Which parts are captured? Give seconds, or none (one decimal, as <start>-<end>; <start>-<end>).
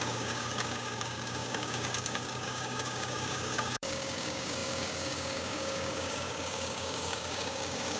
none